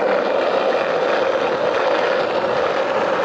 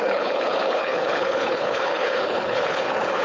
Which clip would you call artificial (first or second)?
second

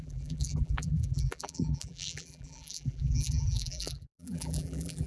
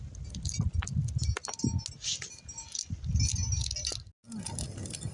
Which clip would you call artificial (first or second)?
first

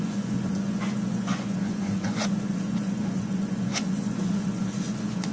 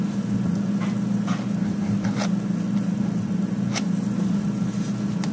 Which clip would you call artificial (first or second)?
first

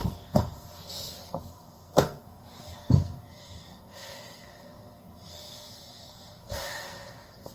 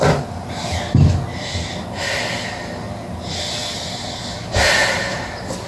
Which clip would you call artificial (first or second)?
first